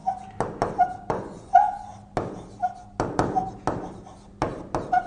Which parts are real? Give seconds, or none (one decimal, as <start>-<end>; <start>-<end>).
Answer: 0.0-1.1; 1.9-5.1